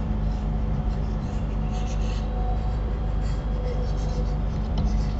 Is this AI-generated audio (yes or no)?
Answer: yes